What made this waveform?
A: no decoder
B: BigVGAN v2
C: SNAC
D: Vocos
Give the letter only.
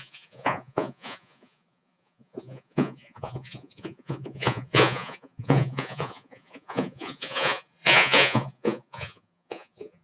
D